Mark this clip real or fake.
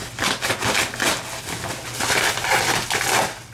real